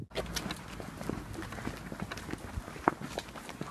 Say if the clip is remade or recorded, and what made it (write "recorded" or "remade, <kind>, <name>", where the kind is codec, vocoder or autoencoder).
recorded